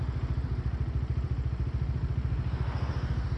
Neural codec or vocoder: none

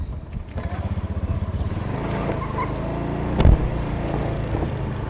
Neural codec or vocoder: none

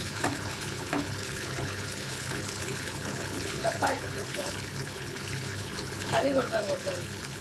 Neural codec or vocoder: codec, HILCodec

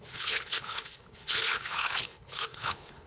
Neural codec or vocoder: codec, HILCodec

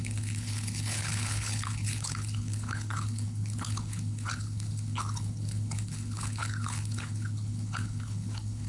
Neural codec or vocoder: codec, HILCodec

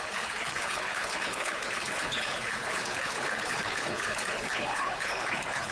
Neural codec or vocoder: codec, HILCodec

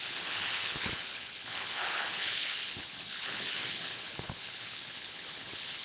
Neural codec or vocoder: codec, HILCodec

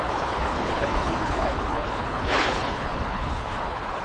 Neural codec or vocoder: codec, HILCodec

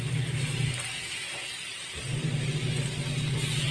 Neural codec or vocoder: none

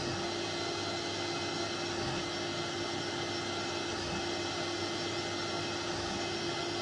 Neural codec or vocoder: none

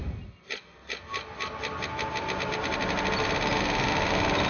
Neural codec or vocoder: none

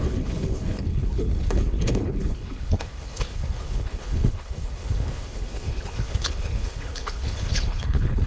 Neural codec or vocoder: codec, HILCodec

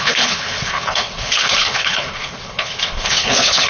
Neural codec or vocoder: codec, HILCodec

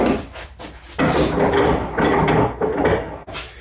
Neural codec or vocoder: none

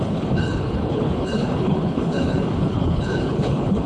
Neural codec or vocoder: codec, HILCodec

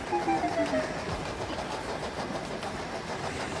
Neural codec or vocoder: none